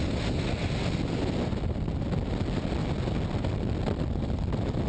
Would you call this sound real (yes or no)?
yes